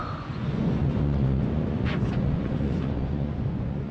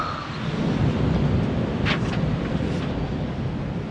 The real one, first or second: second